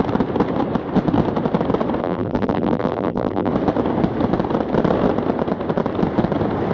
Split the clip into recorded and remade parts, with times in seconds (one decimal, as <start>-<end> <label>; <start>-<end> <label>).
0.0-2.0 recorded; 2.0-3.5 remade; 3.5-6.7 recorded